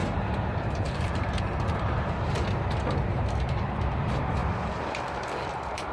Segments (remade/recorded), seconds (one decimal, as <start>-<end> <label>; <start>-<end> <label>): 0.0-4.4 remade; 4.4-5.5 recorded; 5.5-5.9 remade